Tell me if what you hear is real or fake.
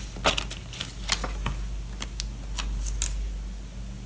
real